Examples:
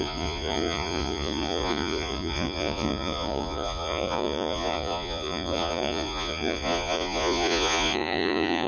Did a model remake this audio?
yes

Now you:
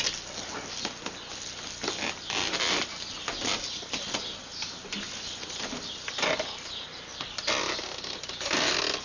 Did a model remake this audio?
no